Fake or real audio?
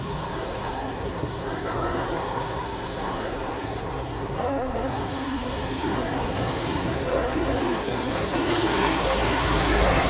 fake